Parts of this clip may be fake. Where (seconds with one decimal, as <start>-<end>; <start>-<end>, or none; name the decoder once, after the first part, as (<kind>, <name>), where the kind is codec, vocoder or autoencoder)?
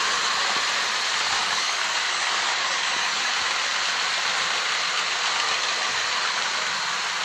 1.4-3.3 (codec, DAC)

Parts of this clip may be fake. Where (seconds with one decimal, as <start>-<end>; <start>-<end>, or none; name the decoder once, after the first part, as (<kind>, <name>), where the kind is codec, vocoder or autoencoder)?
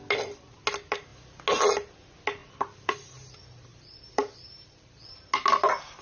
2.4-2.9 (vocoder, BigVGAN v2); 3.7-5.1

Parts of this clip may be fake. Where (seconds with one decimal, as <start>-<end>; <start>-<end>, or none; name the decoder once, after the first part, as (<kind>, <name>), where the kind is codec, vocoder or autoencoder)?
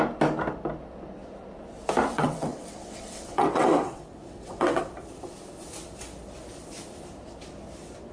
2.1-4.9 (vocoder, WaveNeXt)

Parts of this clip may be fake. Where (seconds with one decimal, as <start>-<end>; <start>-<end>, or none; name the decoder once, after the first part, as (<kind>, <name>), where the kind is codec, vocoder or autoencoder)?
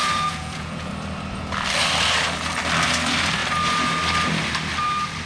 0.0-0.9 (vocoder, Vocos)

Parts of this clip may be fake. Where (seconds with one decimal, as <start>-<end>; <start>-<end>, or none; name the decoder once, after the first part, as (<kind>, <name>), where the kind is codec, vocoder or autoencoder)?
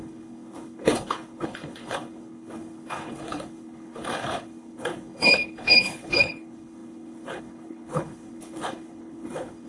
0.0-9.7 (codec, HILCodec)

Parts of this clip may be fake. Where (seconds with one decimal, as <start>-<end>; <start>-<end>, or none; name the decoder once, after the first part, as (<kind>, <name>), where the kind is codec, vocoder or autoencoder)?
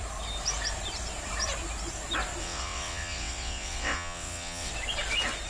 2.4-4.7 (vocoder, WaveNeXt)